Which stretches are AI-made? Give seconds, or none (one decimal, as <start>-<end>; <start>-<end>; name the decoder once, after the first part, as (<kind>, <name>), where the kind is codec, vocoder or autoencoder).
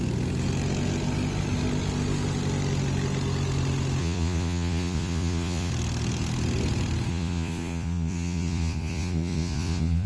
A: 4.0-5.7 (vocoder, Vocos); 7.1-10.1